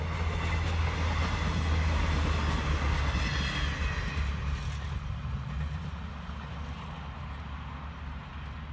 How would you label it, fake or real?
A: real